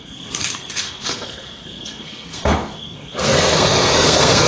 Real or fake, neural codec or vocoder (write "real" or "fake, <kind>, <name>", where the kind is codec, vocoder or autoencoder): fake, codec, SNAC